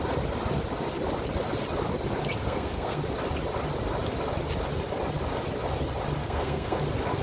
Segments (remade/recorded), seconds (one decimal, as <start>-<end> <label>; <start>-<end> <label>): 0.0-2.4 recorded; 2.4-3.0 remade; 3.0-6.2 recorded; 6.2-6.8 remade; 6.8-7.2 recorded